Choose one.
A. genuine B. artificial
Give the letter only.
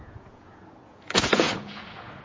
B